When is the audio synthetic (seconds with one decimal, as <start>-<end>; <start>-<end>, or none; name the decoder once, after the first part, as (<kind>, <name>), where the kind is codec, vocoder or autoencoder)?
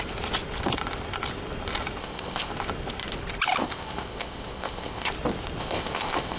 2.0-2.5 (codec, ZipCodec); 3.6-5.1; 5.6-6.4